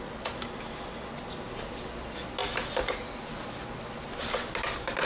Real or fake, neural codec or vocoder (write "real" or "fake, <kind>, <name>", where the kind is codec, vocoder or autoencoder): real